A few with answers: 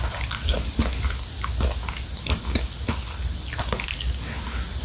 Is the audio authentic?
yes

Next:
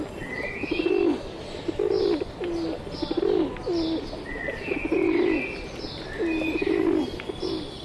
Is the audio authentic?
yes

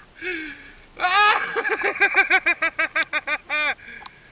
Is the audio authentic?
yes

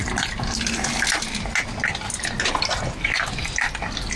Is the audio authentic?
yes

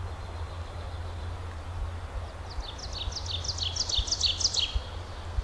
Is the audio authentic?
yes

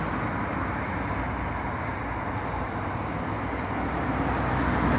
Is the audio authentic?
yes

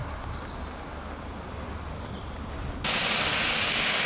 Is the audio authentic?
yes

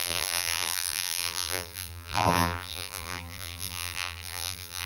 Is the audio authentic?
no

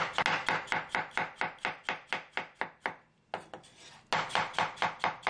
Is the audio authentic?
yes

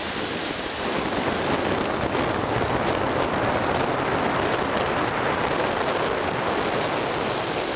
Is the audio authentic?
yes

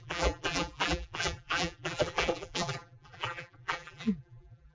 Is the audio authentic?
no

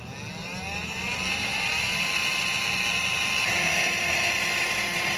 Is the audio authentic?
yes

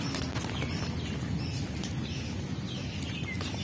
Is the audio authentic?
yes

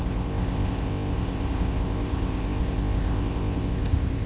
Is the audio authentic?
no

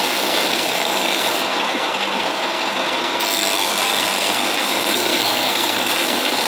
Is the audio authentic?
no